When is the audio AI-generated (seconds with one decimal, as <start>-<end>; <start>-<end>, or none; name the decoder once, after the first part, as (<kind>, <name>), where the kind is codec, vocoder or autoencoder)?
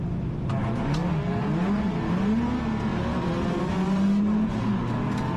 none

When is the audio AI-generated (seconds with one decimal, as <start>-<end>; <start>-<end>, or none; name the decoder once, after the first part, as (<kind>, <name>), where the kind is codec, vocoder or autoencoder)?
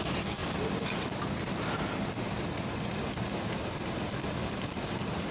none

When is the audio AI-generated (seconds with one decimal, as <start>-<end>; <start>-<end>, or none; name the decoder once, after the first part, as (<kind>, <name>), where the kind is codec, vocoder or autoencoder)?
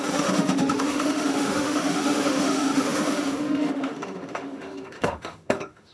0.0-5.9 (autoencoder, DAC-VAE)